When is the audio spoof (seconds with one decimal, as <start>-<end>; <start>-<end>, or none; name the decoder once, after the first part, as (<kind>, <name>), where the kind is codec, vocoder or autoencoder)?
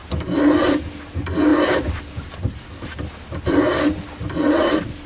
none